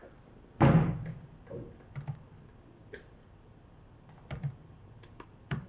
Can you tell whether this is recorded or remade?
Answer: recorded